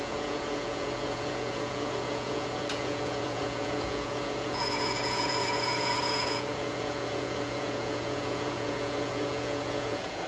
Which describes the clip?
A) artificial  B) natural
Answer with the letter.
A